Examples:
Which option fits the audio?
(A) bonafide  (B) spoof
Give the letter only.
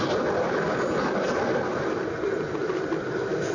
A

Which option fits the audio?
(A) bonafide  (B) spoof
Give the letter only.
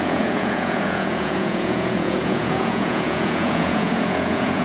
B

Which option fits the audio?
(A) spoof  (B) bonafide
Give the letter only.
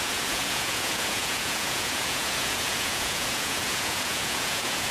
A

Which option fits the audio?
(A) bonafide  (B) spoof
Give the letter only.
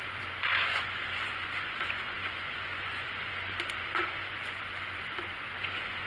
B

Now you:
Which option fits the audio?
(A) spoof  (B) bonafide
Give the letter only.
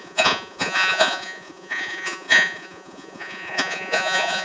A